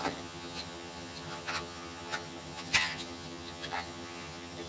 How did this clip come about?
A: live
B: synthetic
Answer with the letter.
B